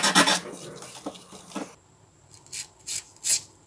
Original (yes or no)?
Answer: yes